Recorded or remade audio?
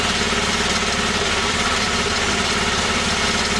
remade